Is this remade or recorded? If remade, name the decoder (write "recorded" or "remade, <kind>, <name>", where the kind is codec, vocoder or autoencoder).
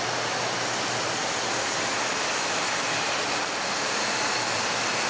recorded